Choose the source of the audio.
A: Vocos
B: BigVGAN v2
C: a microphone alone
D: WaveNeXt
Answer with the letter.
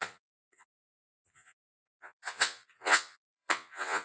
A